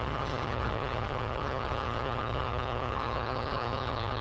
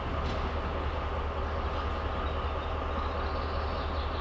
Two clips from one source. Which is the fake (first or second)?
first